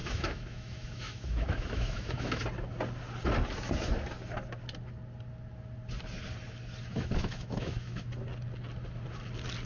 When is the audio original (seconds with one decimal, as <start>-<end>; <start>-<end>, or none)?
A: 2.4-6.9; 8.1-9.7